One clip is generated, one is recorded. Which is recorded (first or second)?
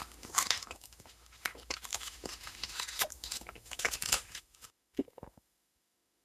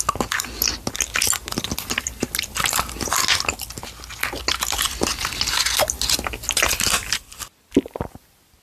second